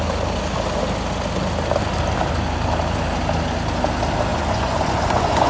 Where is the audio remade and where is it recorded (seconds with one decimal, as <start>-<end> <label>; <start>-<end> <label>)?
0.0-4.3 recorded; 4.3-5.5 remade